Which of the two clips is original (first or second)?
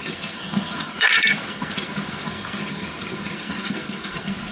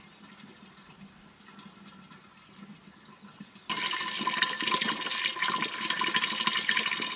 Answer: second